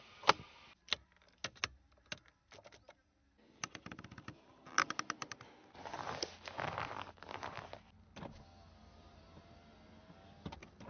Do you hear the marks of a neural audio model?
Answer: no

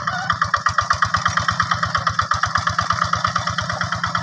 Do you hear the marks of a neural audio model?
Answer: no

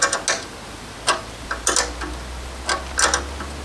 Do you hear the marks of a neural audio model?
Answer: no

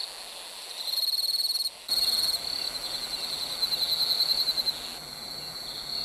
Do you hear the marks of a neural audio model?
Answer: yes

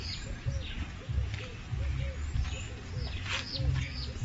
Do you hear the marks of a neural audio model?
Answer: no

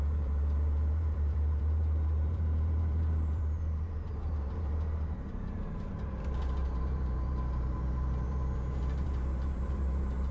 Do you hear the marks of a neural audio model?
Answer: yes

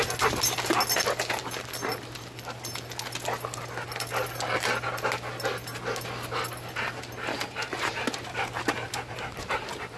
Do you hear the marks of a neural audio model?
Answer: no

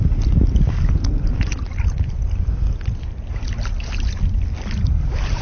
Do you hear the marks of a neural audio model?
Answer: no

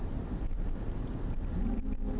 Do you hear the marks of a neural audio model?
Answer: no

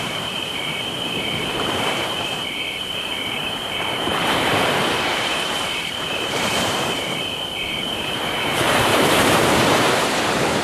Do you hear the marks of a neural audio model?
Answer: yes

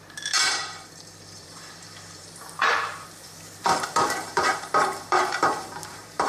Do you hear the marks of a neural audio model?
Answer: yes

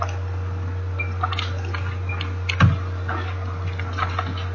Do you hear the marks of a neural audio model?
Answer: no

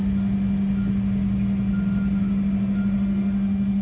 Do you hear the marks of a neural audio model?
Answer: no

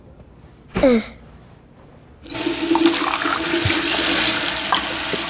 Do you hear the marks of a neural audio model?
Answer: no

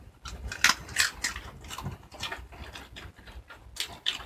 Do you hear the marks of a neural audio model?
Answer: no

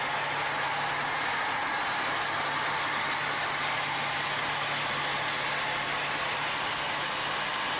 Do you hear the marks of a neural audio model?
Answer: no